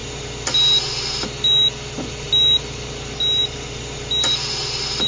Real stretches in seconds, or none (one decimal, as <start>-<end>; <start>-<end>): 0.0-5.1